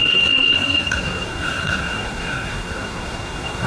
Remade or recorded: remade